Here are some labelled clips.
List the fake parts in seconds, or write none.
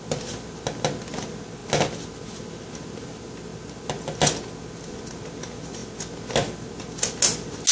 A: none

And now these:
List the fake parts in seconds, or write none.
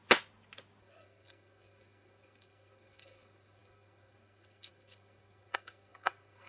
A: 0.8-6.5 (codec, SNAC)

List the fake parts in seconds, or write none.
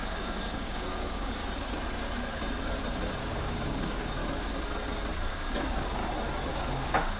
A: 0.0-1.4 (codec, DAC); 3.2-4.2; 5.3-6.0; 6.5-7.2